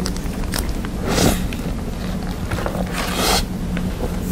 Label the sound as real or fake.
real